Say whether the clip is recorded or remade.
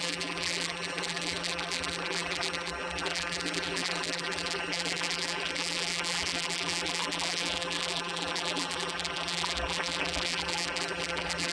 remade